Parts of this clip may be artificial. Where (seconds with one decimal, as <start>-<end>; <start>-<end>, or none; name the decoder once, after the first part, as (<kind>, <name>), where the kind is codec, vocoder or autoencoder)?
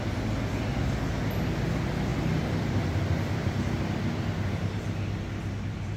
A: 2.1-3.8 (vocoder, BigVGAN v2)